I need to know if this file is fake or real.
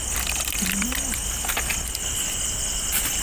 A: real